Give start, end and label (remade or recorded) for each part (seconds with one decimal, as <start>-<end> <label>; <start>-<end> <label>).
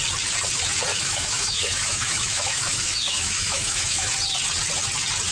0.0-0.9 recorded; 0.9-4.1 remade; 4.1-5.3 recorded